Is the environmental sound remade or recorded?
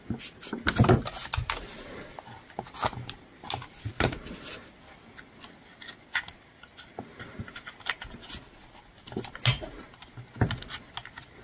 recorded